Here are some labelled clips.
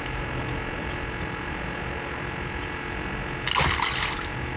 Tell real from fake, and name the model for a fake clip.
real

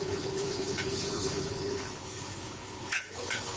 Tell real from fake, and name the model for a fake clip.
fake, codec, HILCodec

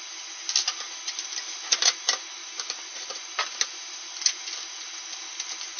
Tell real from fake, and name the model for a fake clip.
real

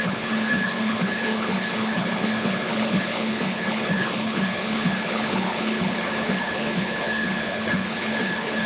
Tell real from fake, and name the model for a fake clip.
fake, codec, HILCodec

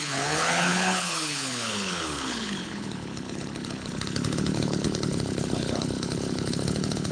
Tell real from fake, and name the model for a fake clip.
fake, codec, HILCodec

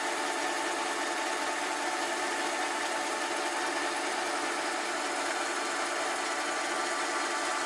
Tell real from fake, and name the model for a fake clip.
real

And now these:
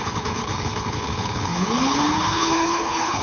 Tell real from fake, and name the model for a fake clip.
fake, codec, HILCodec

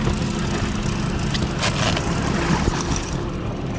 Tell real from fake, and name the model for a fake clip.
real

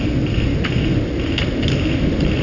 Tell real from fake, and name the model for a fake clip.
real